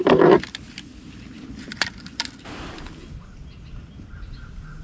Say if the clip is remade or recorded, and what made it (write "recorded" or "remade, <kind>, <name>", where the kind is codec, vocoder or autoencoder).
recorded